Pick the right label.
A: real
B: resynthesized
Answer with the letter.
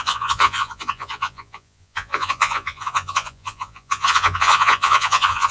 B